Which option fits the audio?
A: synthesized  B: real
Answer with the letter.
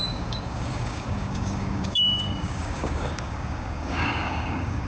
A